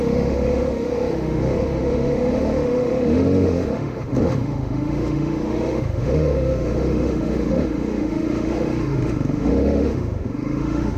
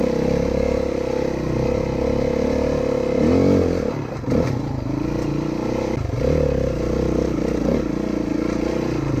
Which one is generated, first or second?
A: first